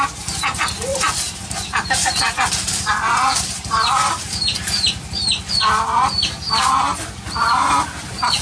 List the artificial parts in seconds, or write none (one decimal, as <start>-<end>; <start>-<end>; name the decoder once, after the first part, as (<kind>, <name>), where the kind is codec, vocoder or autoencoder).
0.9-5.5 (vocoder, BigVGAN v2)